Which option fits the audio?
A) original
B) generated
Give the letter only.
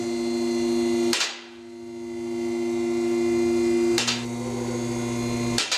A